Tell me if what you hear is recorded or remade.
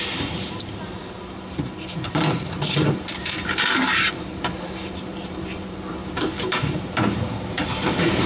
remade